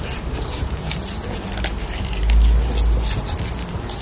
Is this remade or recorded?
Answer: recorded